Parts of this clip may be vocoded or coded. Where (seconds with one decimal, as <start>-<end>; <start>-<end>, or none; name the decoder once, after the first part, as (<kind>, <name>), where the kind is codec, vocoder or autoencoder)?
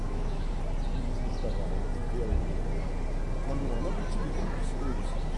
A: 0.0-0.5 (autoencoder, DAC-VAE)